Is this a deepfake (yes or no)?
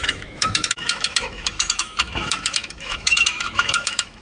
yes